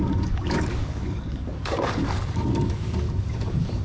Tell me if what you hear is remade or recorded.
remade